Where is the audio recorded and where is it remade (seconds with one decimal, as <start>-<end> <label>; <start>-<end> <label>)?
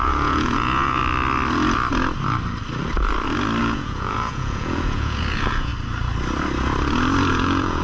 0.0-1.0 remade; 1.0-3.6 recorded; 3.6-5.7 remade; 5.7-7.3 recorded; 7.3-7.8 remade